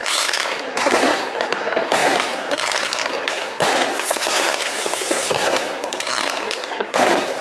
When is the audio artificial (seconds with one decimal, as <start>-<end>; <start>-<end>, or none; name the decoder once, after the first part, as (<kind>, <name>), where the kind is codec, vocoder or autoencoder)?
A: 0.0-7.4 (codec, SNAC)